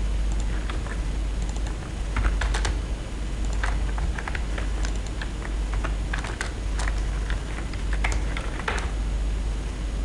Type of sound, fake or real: real